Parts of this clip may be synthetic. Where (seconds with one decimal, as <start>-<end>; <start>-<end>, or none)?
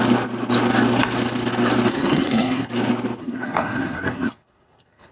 1.9-2.7; 3.2-5.1